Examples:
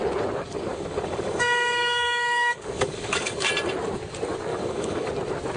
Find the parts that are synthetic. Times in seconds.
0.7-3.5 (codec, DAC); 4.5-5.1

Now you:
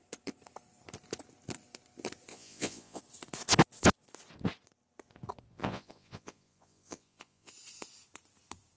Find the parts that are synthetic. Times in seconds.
2.3-3.0 (vocoder, Vocos); 5.5-7.5